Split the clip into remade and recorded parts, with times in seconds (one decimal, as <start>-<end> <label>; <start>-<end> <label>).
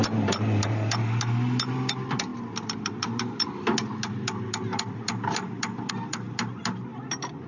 0.0-7.5 recorded